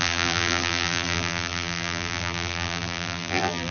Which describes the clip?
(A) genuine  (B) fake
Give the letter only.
B